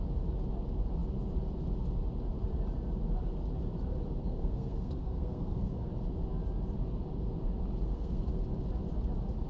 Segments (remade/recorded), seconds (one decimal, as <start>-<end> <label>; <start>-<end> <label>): 0.0-4.2 recorded; 4.2-5.9 remade; 5.9-7.9 recorded; 7.9-8.4 remade; 8.4-9.5 recorded